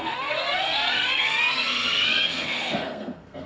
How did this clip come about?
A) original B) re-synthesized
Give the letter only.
B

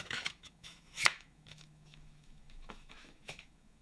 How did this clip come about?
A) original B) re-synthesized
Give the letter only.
B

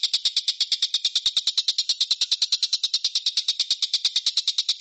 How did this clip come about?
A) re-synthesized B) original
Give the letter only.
B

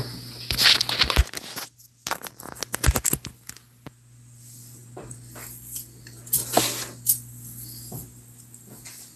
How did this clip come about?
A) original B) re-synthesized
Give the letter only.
A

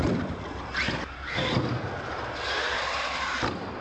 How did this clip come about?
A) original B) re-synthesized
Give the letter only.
A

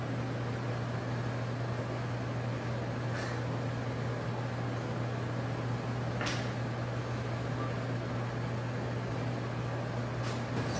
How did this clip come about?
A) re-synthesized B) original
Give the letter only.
B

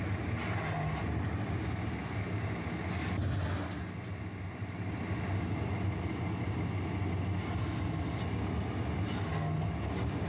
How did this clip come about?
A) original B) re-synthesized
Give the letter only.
A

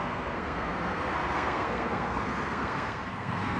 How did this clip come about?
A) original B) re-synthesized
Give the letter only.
B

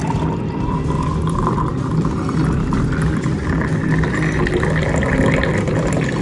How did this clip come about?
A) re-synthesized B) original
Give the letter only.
B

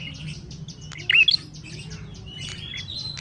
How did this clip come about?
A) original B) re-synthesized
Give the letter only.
A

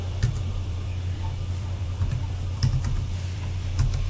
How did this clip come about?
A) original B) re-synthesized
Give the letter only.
B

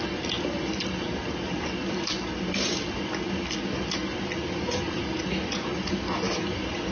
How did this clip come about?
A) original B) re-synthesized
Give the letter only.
A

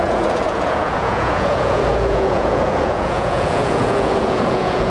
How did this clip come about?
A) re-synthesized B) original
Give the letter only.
A